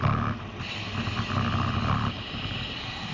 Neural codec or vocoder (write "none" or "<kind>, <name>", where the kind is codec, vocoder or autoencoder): none